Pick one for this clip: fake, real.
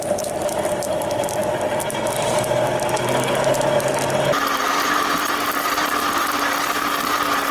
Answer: real